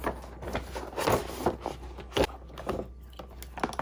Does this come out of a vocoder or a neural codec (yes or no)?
no